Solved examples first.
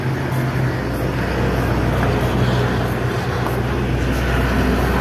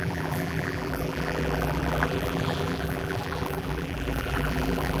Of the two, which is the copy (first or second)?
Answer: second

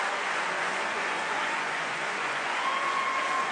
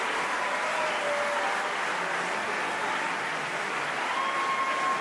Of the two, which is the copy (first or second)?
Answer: first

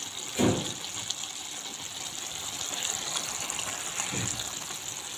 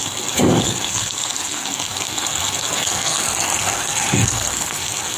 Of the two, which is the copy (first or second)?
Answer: second